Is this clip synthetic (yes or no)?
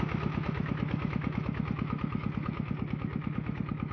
yes